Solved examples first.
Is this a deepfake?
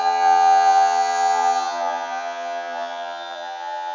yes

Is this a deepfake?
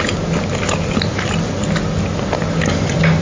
no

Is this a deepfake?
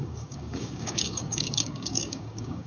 yes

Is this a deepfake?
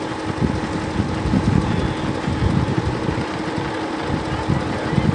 no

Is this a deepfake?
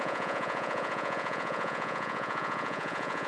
yes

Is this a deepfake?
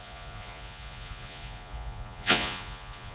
yes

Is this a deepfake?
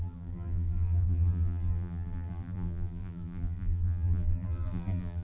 yes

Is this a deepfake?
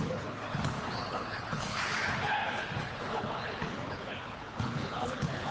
yes